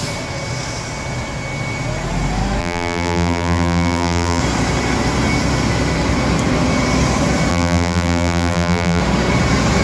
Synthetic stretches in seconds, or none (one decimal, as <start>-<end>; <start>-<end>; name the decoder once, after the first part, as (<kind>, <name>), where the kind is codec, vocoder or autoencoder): 2.6-4.4 (vocoder, BigVGAN v2); 7.5-9.0